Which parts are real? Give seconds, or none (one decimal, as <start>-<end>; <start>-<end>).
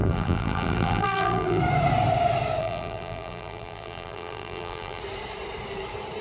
1.6-2.6; 5.0-6.2